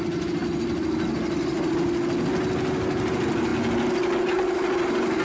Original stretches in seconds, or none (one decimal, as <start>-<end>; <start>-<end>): 0.0-5.2